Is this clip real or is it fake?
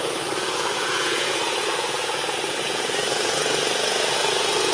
fake